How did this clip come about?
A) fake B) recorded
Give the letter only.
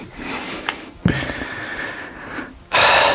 B